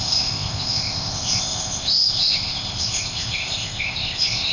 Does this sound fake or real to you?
fake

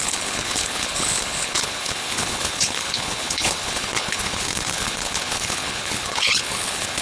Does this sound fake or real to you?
fake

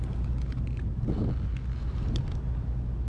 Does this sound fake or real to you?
real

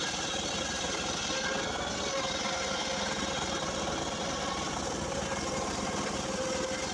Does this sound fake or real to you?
real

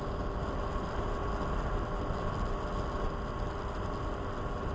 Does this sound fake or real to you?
real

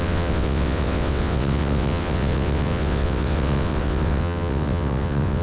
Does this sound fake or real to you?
fake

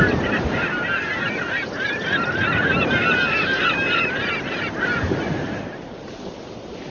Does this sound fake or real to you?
fake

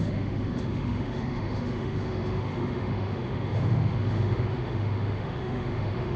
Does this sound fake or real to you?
fake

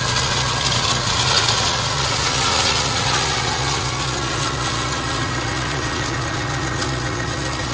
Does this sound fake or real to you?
fake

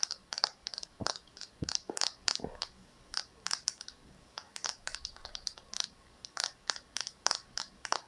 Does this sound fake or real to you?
fake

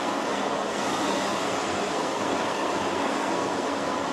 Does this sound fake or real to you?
fake